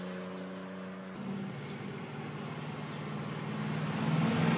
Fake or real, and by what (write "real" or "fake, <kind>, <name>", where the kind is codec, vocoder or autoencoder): real